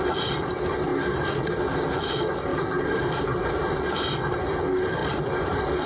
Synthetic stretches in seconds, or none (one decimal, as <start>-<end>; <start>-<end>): 2.5-3.8